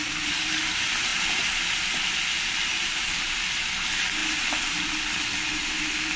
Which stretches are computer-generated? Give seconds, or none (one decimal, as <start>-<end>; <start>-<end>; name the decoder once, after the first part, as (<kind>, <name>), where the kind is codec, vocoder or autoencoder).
2.7-3.6 (vocoder, BigVGAN v2)